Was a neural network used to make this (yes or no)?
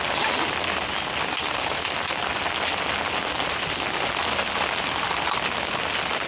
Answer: no